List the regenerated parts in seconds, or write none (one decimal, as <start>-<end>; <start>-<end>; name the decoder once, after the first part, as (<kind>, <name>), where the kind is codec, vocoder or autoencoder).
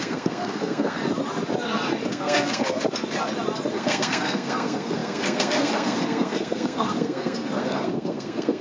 0.0-1.0 (codec, SNAC); 2.1-2.8; 3.7-8.6